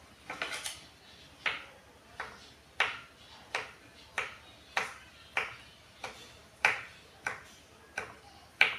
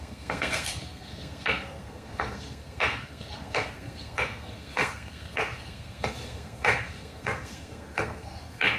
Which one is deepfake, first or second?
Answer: second